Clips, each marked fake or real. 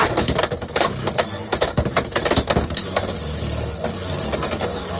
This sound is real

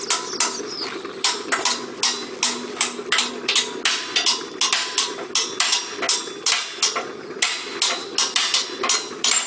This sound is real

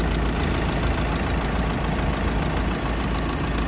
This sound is real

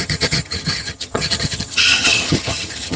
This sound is fake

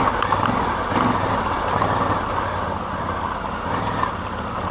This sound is real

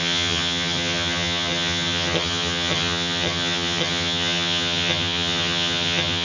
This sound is fake